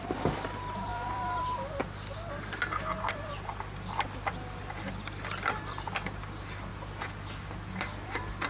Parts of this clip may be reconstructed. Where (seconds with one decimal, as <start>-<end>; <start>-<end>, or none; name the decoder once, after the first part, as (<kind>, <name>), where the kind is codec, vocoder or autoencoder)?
none